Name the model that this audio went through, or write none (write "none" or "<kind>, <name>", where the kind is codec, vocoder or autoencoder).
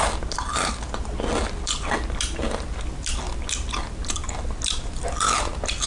none